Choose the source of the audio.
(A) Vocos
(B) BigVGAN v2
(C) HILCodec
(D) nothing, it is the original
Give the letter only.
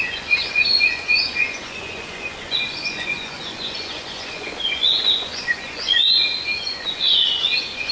A